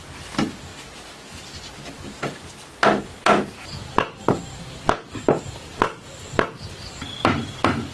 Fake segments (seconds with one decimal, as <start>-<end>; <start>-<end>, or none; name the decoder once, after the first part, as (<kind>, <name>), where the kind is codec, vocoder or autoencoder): none